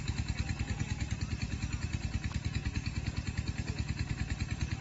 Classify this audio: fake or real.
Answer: real